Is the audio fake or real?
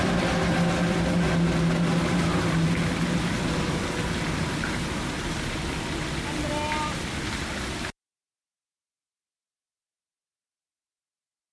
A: real